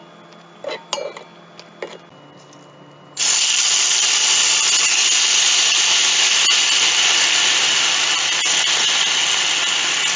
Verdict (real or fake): real